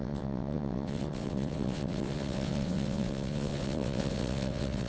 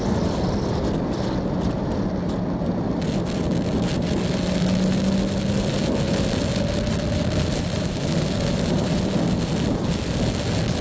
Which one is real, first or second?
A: second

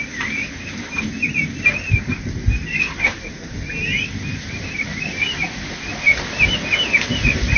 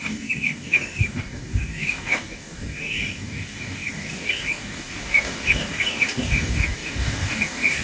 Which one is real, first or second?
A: first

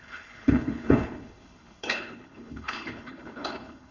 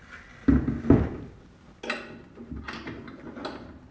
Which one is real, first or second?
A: second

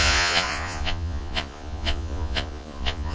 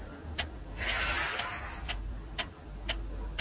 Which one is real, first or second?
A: second